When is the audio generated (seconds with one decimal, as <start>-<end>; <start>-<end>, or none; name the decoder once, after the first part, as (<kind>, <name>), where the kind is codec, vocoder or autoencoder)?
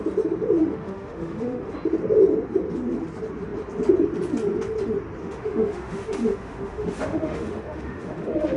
0.6-1.7 (autoencoder, DAC-VAE); 5.2-8.6